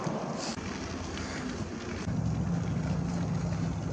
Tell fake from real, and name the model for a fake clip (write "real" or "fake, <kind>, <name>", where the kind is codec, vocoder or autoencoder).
real